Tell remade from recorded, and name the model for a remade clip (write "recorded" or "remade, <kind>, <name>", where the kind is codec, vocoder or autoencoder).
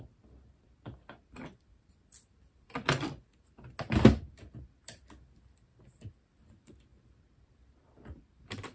recorded